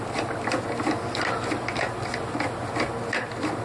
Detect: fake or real real